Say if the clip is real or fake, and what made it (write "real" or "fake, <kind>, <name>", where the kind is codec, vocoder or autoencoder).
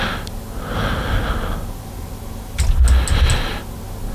real